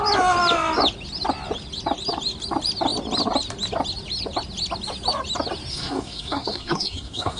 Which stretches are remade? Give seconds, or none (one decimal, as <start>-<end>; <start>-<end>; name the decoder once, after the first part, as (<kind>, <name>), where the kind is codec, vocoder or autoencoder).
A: 5.7-7.4 (codec, SNAC)

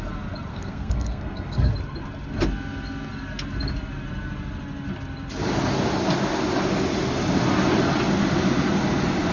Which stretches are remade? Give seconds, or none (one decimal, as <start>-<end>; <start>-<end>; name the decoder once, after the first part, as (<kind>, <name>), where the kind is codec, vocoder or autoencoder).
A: 0.5-1.7 (codec, SNAC)

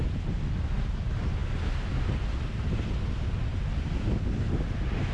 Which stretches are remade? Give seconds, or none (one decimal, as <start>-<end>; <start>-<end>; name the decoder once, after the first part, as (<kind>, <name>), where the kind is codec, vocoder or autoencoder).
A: none